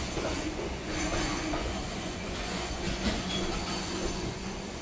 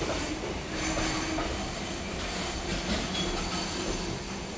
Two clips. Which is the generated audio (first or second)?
first